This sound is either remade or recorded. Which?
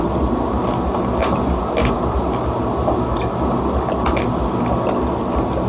recorded